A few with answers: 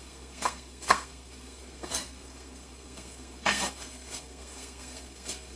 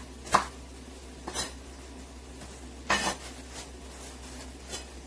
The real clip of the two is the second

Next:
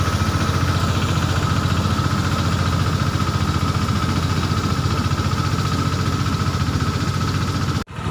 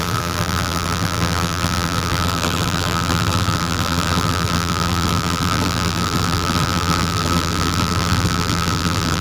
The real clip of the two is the first